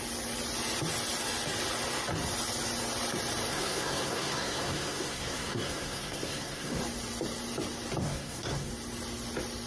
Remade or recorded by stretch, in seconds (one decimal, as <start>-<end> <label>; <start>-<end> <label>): 0.0-3.5 recorded; 3.5-6.8 remade; 6.8-8.0 recorded; 8.0-8.7 remade; 8.7-9.7 recorded